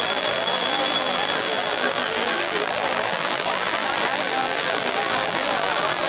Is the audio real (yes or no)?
no